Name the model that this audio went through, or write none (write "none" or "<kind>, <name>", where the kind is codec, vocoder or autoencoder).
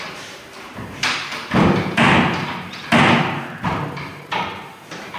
vocoder, BigVGAN v2